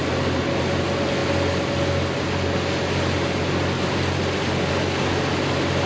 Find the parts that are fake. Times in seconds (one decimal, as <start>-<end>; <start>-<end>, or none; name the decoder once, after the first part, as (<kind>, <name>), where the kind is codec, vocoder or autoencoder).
none